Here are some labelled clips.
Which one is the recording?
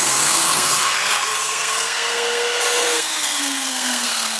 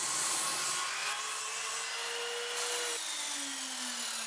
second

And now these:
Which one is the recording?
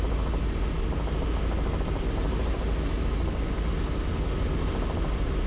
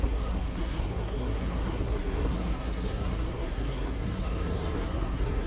first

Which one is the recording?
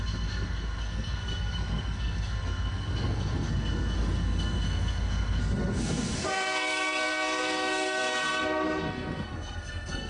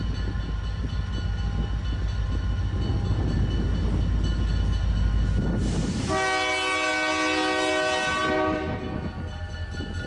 second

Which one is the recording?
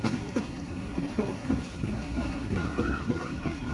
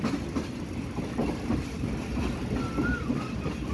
second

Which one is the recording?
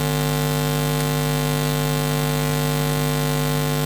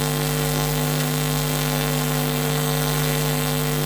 first